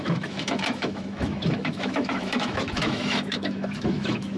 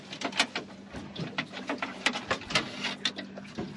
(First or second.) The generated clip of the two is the first